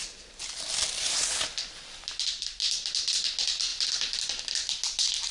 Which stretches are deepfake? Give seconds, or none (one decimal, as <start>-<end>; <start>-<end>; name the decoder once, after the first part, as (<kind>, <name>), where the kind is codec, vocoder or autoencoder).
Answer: none